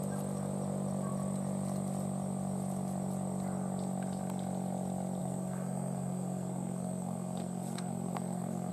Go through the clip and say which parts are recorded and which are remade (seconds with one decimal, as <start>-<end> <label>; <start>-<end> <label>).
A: 0.0-5.2 recorded; 5.2-8.7 remade